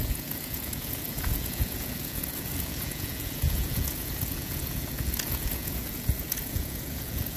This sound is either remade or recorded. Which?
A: remade